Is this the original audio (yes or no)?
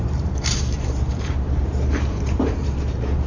no